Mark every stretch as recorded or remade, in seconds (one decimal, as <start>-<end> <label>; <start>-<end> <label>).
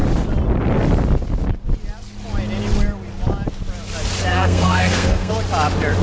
0.0-4.3 recorded; 4.3-5.3 remade; 5.3-6.0 recorded